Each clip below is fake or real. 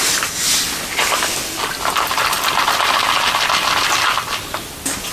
real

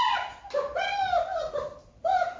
real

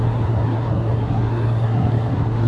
fake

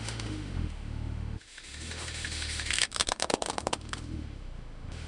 fake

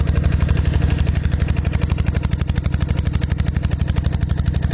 real